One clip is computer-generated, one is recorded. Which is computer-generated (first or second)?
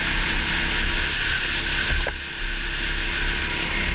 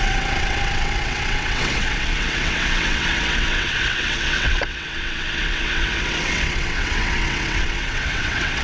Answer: second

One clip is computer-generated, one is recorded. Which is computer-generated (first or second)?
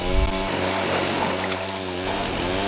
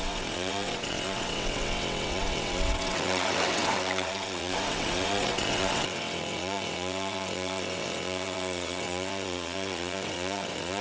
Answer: second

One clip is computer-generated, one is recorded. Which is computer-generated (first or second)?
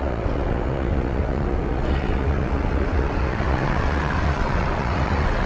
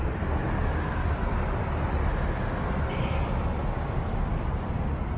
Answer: first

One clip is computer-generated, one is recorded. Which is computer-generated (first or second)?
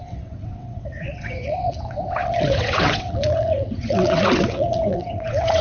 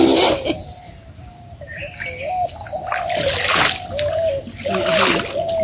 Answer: first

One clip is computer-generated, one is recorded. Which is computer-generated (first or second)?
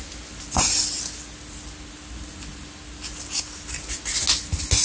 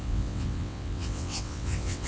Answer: second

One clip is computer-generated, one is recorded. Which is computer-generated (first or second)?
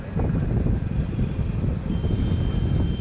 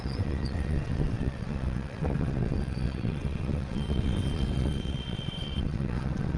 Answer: second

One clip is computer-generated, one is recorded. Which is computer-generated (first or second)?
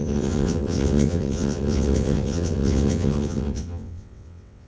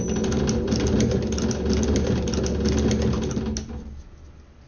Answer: first